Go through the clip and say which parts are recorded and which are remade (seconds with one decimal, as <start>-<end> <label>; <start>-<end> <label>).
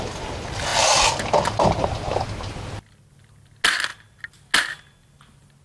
0.0-5.6 recorded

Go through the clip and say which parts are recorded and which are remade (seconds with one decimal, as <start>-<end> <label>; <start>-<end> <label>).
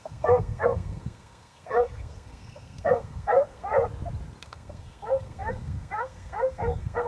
0.0-3.7 remade; 3.7-4.4 recorded; 4.4-7.1 remade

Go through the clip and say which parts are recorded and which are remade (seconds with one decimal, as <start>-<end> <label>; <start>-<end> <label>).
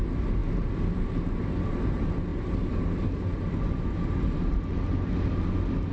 0.0-5.9 recorded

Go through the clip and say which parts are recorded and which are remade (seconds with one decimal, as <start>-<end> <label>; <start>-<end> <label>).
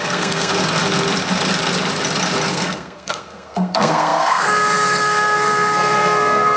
0.0-0.5 remade; 0.5-2.5 recorded; 2.5-6.6 remade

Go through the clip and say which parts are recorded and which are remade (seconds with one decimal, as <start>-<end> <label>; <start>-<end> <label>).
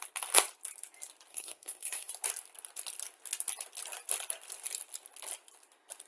0.0-1.3 recorded; 1.3-2.1 remade; 2.1-6.1 recorded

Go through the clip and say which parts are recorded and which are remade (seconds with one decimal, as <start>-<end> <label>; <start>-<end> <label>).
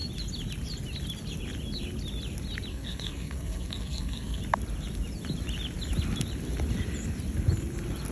0.0-2.7 recorded; 2.7-4.4 remade; 4.4-8.1 recorded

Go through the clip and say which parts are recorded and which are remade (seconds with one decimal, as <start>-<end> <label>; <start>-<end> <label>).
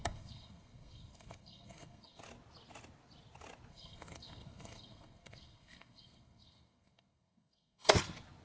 0.0-2.2 remade; 2.2-3.7 recorded; 3.7-7.9 remade; 7.9-8.4 recorded